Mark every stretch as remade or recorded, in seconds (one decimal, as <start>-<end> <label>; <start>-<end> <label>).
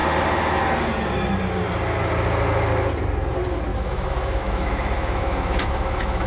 0.0-3.7 recorded; 3.7-6.3 remade